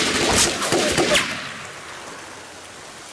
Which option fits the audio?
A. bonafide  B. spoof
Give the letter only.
A